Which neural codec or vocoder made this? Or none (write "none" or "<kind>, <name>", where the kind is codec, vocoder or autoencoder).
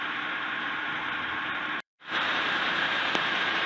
vocoder, BigVGAN v2